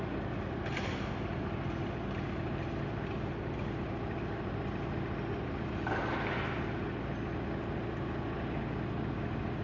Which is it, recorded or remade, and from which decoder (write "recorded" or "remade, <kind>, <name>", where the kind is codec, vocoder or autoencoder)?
recorded